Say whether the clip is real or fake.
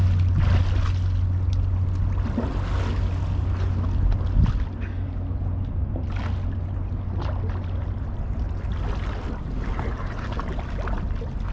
real